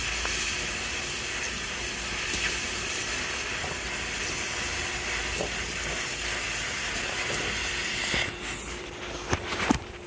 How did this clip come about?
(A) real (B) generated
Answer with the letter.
A